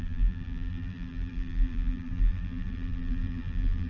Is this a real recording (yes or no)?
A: no